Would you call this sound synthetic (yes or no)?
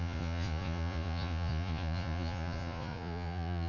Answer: yes